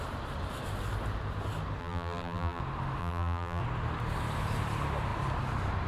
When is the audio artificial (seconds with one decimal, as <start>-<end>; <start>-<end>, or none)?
1.8-2.6; 3.0-3.6